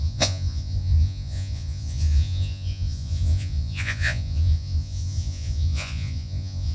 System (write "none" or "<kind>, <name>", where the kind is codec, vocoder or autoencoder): vocoder, Vocos